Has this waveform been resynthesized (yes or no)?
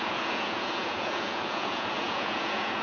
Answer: yes